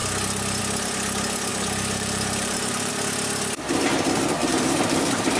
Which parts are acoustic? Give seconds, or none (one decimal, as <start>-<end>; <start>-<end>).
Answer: 0.0-1.5; 2.9-4.4; 5.0-5.4